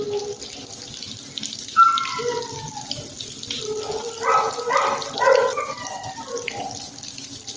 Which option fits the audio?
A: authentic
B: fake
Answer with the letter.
A